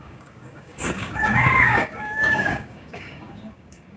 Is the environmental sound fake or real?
fake